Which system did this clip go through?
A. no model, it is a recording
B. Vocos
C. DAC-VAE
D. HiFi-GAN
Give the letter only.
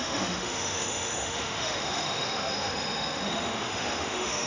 C